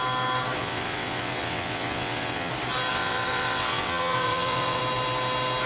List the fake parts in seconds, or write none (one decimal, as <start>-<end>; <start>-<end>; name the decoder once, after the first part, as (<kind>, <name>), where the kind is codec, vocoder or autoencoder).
0.6-2.5 (vocoder, WaveNeXt); 2.9-4.8